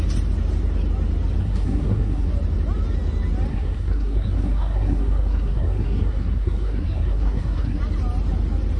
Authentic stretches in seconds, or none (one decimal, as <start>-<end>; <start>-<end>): 0.0-1.4; 2.3-3.5; 7.8-8.8